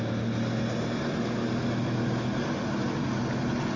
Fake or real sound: real